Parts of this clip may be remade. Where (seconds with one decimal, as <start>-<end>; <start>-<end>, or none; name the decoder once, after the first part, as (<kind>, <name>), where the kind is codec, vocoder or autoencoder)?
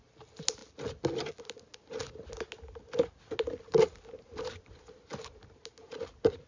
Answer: none